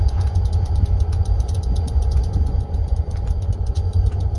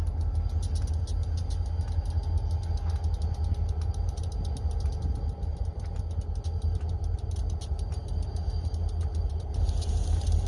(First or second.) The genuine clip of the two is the second